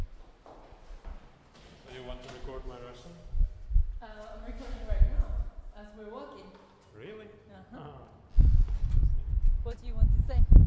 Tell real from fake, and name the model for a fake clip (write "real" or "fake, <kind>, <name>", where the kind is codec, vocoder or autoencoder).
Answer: real